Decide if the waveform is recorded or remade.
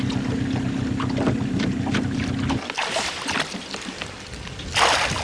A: recorded